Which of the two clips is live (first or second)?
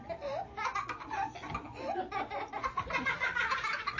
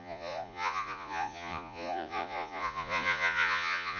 first